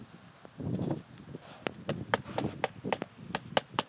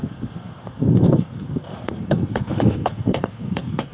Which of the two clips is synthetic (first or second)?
second